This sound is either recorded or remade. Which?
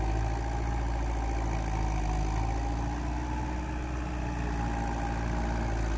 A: recorded